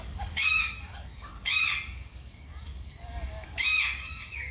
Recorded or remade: remade